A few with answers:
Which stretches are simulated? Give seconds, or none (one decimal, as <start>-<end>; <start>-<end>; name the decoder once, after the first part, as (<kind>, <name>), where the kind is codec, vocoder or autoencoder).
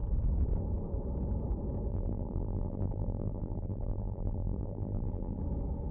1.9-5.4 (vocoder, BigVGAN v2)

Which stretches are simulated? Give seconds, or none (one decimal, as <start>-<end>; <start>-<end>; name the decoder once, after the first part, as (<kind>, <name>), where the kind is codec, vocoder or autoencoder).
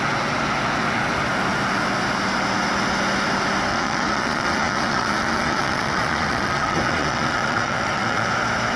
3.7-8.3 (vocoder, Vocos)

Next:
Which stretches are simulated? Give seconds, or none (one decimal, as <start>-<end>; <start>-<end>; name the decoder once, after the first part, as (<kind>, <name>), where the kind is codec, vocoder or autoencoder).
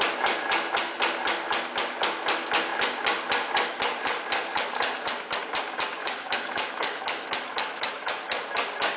6.0-8.1 (autoencoder, DAC-VAE)